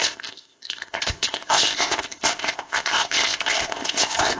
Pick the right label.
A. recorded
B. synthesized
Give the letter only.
B